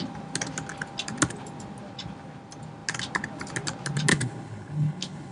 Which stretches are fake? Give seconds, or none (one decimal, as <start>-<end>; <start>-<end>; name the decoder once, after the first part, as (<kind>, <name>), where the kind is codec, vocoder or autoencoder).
4.1-5.3 (codec, HILCodec)